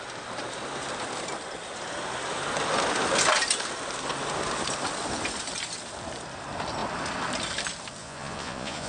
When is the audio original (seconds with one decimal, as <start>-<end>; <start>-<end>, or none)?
0.0-8.0

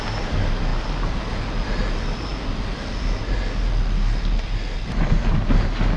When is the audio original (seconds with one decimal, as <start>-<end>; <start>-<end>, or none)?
0.0-6.0

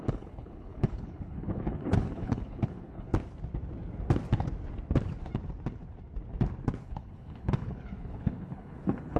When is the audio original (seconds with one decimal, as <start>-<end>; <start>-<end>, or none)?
3.1-6.8